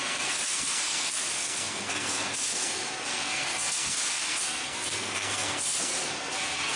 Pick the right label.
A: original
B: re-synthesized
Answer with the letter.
B